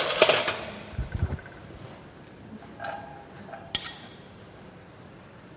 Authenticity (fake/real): real